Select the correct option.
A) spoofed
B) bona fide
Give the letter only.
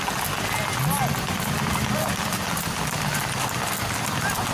B